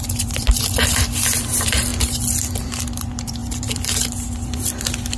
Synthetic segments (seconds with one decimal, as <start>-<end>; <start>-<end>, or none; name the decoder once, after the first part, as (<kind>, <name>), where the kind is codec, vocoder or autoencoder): 0.0-1.9 (vocoder, BigVGAN v2); 2.4-5.2